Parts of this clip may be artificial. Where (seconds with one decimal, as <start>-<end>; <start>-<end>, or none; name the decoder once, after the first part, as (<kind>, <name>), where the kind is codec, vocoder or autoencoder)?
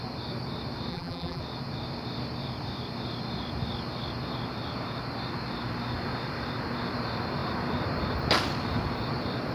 0.9-1.4 (vocoder, BigVGAN v2)